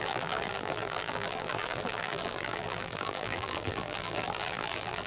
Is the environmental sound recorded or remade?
remade